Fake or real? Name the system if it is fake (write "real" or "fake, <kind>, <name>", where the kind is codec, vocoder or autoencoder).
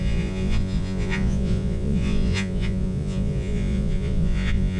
fake, vocoder, Vocos